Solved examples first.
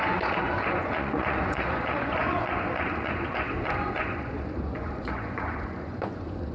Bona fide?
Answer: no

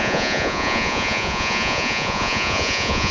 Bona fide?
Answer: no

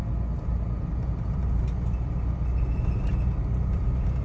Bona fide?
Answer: yes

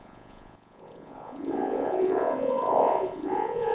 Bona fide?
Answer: no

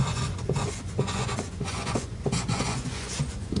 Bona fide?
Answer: no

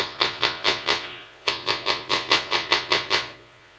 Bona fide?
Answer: no